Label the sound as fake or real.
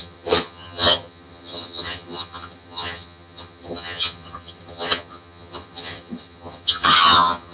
fake